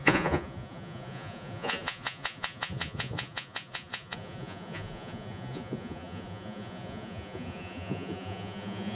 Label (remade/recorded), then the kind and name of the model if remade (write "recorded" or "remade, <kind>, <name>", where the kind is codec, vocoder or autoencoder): remade, vocoder, Vocos